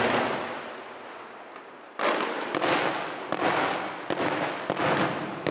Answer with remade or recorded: recorded